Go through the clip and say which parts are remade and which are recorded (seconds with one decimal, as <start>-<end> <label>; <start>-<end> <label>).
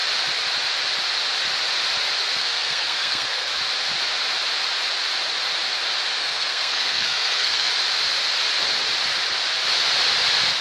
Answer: 0.0-2.4 recorded; 2.4-3.5 remade; 3.5-6.2 recorded; 6.2-7.7 remade; 7.7-10.6 recorded